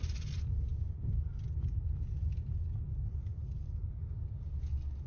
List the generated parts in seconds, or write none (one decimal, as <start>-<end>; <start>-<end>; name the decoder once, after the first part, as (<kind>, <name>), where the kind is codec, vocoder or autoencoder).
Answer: none

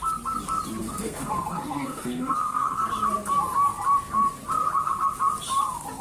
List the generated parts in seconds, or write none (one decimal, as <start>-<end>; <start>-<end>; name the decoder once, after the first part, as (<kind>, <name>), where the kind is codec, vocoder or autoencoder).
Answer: 0.8-2.9 (codec, SNAC)